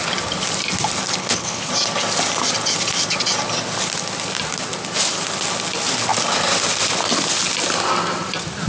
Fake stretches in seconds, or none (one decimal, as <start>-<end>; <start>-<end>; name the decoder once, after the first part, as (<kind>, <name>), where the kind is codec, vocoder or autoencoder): 1.2-1.7 (codec, HILCodec)